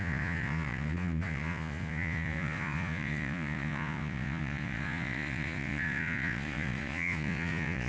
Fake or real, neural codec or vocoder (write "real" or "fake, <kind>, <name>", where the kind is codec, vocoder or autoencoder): fake, vocoder, Vocos